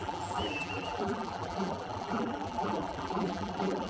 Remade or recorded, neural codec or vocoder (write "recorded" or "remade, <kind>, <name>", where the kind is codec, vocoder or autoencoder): remade, vocoder, BigVGAN v2